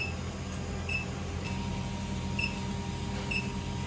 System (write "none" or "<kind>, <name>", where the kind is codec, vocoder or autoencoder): none